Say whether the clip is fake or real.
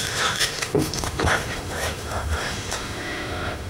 fake